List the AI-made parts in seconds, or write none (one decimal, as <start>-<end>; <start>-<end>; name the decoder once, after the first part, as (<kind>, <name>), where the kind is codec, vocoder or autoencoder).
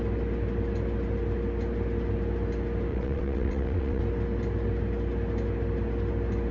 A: 2.9-4.0 (vocoder, WaveNeXt)